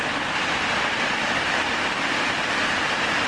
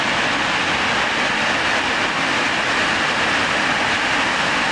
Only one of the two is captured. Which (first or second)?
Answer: second